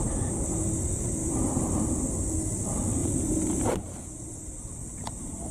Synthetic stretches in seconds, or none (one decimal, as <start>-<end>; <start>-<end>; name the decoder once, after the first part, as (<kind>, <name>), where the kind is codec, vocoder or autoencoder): 1.2-2.0 (vocoder, BigVGAN v2); 3.0-5.5